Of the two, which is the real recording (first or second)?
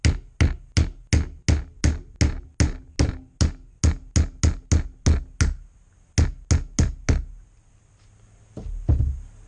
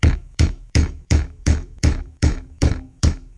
first